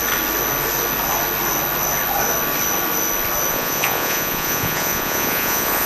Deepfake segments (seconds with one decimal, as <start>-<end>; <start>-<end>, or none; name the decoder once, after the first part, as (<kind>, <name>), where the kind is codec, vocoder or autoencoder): 3.5-5.9 (vocoder, Vocos)